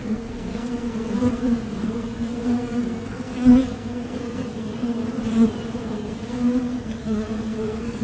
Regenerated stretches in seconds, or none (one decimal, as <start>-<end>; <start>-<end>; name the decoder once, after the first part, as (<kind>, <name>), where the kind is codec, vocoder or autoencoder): 0.0-5.0 (codec, SNAC); 5.8-8.0